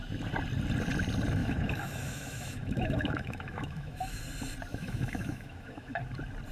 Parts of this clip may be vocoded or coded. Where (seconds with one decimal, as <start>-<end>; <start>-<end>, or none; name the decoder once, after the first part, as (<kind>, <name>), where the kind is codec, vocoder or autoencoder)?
1.4-4.2 (autoencoder, DAC-VAE); 4.7-6.0